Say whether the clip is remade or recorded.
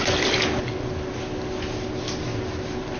recorded